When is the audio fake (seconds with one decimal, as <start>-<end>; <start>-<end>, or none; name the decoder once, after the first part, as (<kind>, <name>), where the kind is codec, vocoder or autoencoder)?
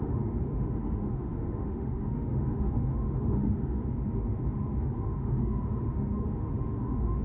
0.0-7.2 (autoencoder, DAC-VAE)